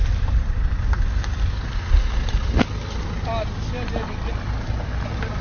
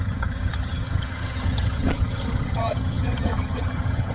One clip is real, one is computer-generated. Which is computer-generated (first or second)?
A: second